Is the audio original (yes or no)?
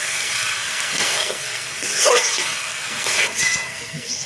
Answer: no